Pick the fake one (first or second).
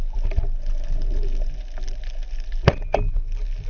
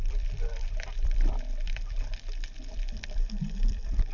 second